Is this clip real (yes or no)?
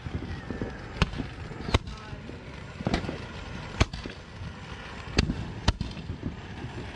yes